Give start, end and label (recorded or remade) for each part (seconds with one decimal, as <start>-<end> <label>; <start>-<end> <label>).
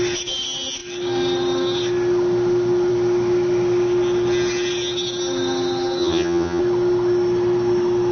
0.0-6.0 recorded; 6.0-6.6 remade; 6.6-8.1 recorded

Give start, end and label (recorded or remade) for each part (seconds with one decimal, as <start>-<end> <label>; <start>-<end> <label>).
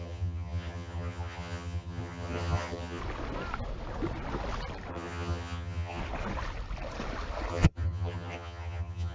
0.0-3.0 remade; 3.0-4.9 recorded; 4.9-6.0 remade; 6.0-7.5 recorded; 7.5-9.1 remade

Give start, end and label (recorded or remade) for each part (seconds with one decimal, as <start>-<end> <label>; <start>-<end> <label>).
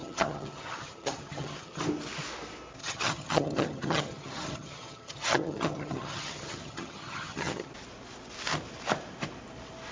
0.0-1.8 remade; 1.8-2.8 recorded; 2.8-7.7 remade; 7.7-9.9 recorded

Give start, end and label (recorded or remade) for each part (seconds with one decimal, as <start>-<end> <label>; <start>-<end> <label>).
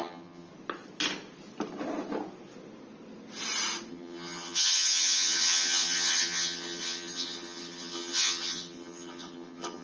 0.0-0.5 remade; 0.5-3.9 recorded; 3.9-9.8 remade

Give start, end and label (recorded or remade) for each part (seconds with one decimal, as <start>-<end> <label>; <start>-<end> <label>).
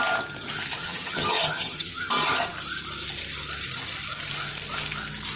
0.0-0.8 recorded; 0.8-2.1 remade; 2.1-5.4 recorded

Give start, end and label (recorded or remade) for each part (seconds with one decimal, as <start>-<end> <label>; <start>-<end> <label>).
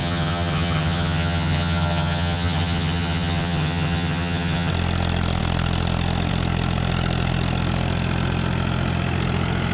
0.0-4.7 remade; 4.7-9.7 recorded